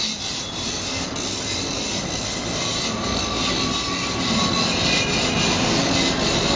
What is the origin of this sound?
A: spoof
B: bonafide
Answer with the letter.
B